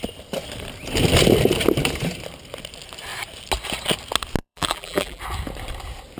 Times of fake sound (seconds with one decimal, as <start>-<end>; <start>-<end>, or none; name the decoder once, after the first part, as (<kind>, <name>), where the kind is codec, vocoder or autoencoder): 4.4-5.2 (vocoder, BigVGAN v2)